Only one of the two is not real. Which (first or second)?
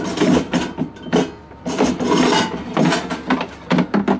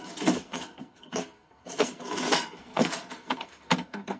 second